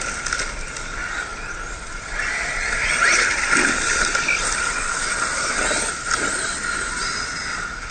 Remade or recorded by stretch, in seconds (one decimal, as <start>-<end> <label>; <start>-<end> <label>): 0.0-7.9 recorded

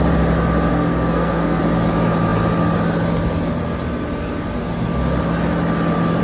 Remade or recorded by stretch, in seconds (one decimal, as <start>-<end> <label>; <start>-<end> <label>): 0.0-0.7 recorded; 0.7-1.6 remade; 1.6-6.2 recorded

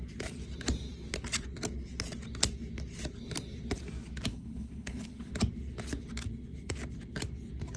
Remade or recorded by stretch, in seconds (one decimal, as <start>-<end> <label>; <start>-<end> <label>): 0.0-4.3 recorded; 4.3-5.3 remade; 5.3-7.8 recorded

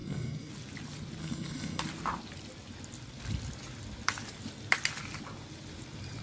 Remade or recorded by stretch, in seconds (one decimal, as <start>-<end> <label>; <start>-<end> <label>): 0.0-0.5 remade; 0.5-1.2 recorded; 1.2-1.8 remade; 1.8-6.2 recorded

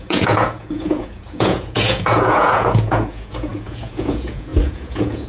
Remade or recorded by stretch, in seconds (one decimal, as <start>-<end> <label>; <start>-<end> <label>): 0.0-5.3 remade

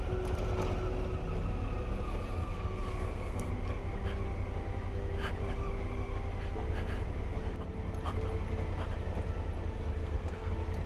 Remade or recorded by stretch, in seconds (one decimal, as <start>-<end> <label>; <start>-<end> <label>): 0.0-2.4 recorded; 2.4-3.5 remade; 3.5-10.0 recorded; 10.0-10.5 remade; 10.5-10.9 recorded

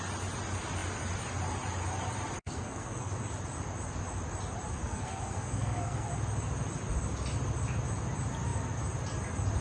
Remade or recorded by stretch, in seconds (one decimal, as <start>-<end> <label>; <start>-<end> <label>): 0.0-2.4 recorded; 2.4-3.1 remade; 3.1-4.8 recorded; 4.8-6.1 remade; 6.1-9.6 recorded

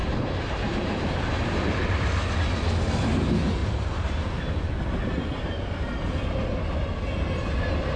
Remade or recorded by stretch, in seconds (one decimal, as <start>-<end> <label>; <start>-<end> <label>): 0.0-2.0 remade; 2.0-3.6 recorded; 3.6-4.7 remade; 4.7-8.0 recorded